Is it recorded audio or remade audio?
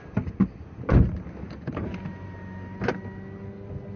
recorded